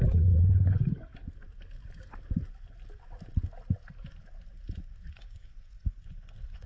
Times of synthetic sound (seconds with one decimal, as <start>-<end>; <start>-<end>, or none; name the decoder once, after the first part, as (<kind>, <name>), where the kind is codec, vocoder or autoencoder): 0.0-1.1 (vocoder, Vocos); 5.1-6.7